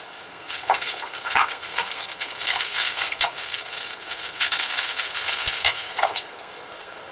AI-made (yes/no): yes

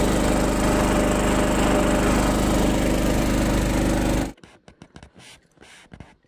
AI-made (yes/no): no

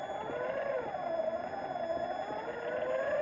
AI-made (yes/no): no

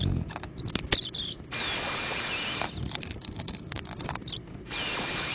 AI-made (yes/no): no